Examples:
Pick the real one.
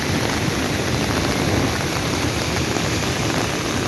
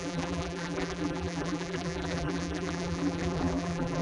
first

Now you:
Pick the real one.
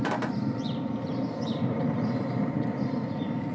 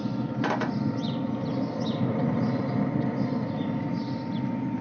second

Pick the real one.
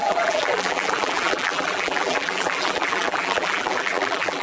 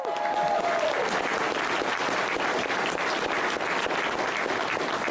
second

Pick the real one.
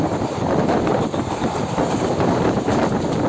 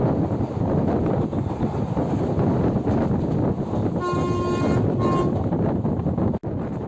second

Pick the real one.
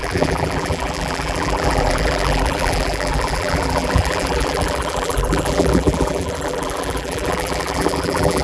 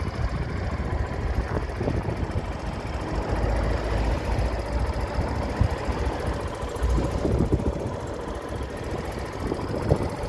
second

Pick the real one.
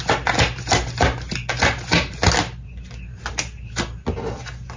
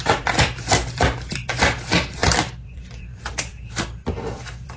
first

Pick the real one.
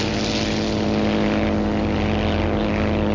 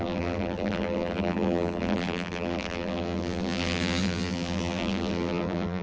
first